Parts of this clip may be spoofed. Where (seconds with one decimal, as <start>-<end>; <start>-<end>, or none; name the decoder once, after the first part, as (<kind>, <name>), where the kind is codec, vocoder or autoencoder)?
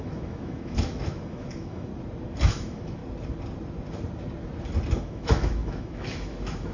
0.0-1.9 (autoencoder, DAC-VAE); 2.5-3.0; 5.0-6.7